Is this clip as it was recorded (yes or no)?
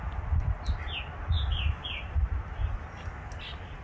yes